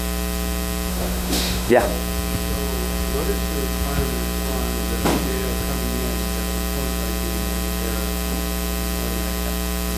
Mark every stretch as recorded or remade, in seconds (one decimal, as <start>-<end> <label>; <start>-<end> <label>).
0.0-0.9 recorded; 0.9-1.9 remade; 1.9-10.0 recorded